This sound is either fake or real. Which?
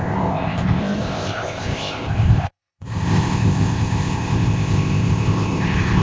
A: fake